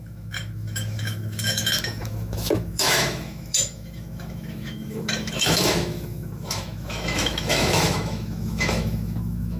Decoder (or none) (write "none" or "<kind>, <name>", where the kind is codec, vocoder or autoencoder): autoencoder, DAC-VAE